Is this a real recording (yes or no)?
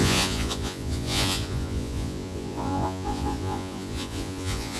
no